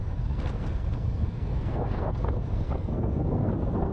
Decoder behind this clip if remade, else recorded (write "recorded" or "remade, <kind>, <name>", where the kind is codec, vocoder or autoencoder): remade, codec, SNAC